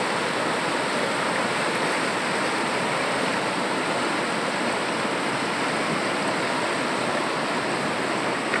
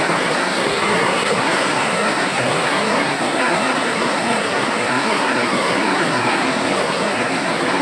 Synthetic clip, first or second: second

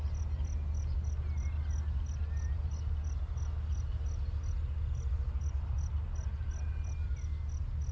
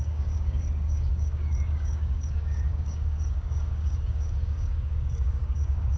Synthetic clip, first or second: second